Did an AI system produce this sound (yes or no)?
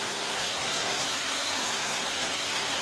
yes